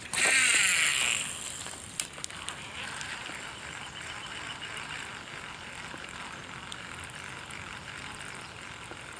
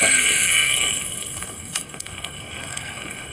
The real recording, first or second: first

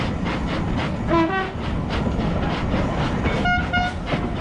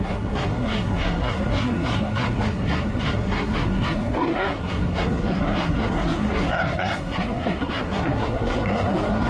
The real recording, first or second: first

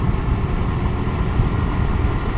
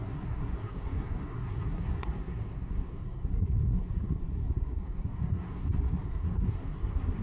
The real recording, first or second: first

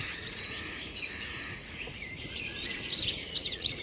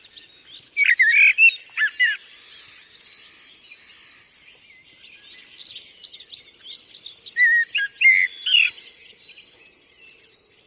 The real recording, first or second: second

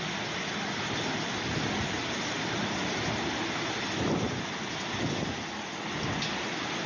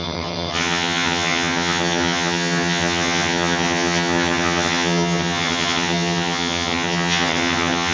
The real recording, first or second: first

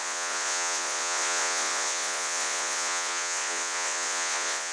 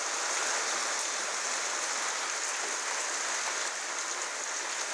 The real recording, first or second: second